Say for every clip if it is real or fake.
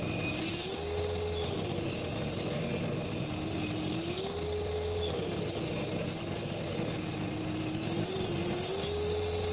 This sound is real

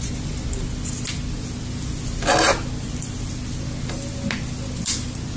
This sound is real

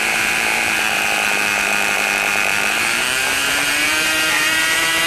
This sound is fake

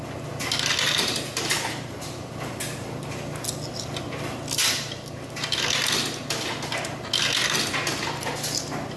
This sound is real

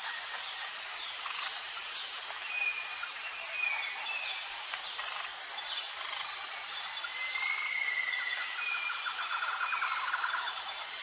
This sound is real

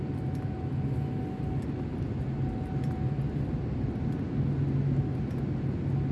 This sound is real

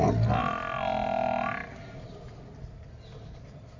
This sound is real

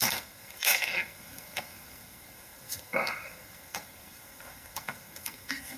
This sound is fake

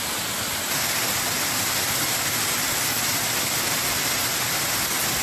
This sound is real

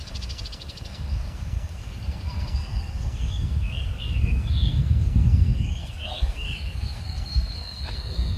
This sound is fake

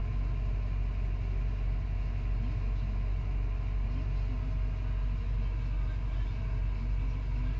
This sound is real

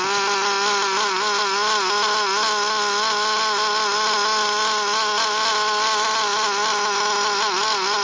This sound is real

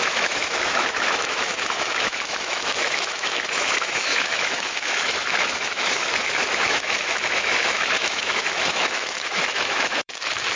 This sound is fake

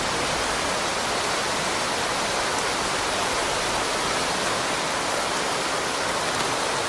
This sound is real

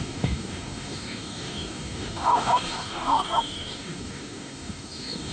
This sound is fake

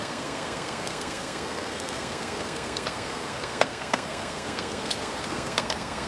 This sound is fake